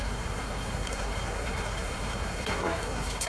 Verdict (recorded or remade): remade